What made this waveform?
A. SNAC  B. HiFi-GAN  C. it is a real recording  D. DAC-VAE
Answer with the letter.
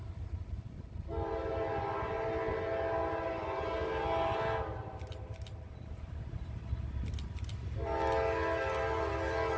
C